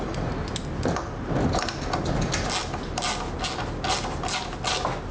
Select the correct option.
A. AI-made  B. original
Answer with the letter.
B